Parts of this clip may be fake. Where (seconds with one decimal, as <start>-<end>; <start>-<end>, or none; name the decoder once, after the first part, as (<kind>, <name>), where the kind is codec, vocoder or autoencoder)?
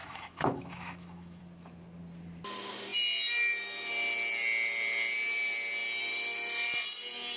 0.0-1.4 (autoencoder, DAC-VAE)